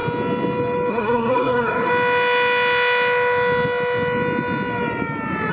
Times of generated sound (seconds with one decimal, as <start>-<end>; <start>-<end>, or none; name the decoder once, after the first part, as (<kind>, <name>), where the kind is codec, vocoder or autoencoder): 0.9-1.9 (codec, SNAC)